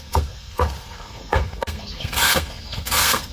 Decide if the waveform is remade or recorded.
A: remade